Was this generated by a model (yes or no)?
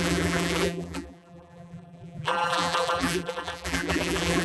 yes